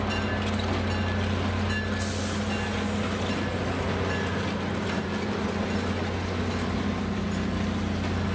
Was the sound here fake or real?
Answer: real